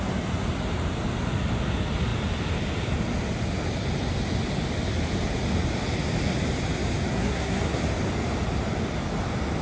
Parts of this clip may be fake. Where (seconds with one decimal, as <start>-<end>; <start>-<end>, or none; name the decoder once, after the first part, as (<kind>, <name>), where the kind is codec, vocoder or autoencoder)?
7.1-7.8 (codec, SNAC)